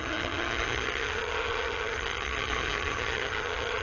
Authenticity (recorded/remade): remade